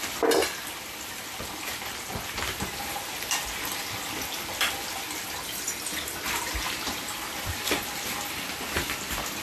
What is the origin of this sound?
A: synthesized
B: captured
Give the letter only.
B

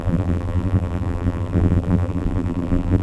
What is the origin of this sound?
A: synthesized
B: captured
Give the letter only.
A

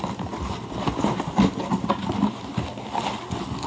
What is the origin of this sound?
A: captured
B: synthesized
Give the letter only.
A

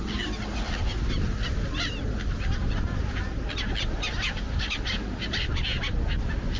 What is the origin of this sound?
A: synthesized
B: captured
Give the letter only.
B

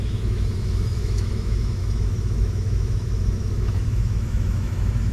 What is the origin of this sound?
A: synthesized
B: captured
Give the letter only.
A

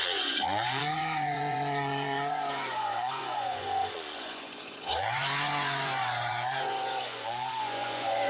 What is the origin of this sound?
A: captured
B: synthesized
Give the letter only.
B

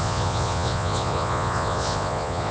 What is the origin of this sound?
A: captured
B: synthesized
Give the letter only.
B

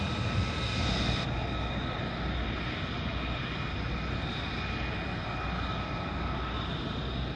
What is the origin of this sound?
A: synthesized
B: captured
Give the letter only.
B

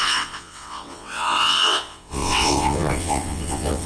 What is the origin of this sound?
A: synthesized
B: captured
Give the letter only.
A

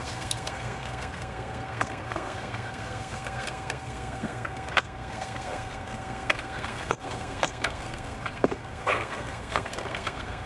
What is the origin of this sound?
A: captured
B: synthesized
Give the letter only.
B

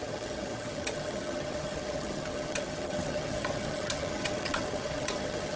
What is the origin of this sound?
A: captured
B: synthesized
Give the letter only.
B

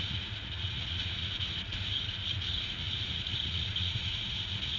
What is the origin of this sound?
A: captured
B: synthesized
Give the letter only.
B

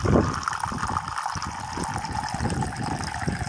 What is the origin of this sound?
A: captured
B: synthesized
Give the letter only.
A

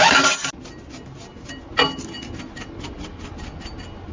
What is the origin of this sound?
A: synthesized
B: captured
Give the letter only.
B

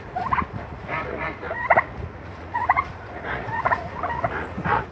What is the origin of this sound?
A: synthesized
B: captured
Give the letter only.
A